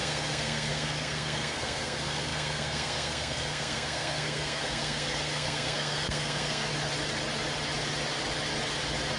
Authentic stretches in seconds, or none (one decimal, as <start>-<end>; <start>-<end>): 6.7-9.2